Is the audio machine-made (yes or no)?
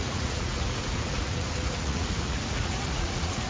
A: yes